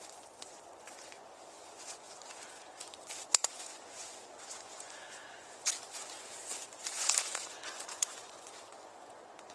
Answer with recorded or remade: remade